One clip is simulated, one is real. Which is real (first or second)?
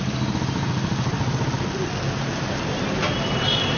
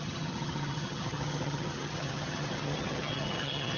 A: first